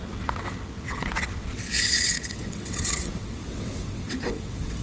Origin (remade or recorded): remade